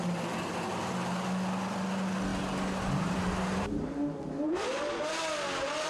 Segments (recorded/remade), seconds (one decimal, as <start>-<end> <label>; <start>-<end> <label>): 0.0-5.9 recorded